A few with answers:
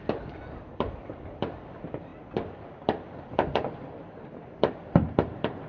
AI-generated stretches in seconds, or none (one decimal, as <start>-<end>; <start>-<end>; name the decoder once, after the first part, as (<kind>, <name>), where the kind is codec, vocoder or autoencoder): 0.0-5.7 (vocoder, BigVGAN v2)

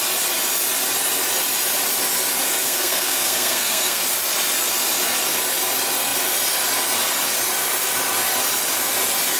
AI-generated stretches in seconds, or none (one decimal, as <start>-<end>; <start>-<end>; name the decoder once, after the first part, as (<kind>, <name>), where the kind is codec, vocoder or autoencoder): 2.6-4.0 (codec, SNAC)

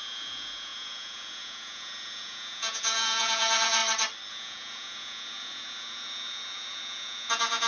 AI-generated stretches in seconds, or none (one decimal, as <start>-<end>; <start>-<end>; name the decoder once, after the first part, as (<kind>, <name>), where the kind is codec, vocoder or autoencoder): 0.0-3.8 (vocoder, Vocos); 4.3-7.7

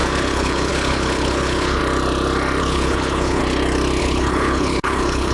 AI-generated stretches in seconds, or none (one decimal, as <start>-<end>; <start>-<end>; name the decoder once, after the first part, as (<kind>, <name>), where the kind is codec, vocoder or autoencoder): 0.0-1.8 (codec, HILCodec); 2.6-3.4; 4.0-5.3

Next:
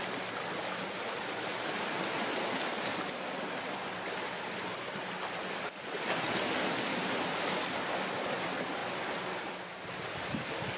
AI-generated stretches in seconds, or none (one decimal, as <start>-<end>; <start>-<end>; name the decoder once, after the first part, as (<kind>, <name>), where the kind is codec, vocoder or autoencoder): none

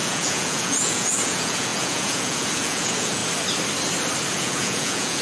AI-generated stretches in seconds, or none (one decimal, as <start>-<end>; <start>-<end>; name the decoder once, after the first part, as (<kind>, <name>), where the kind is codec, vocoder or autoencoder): 0.0-3.2 (vocoder, Vocos); 4.3-5.2

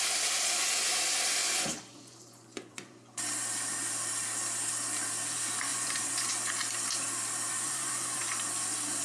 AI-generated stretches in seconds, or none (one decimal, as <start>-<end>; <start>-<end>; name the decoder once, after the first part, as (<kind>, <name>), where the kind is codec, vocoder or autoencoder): 1.4-3.2 (vocoder, Vocos); 5.7-6.3; 7.5-8.2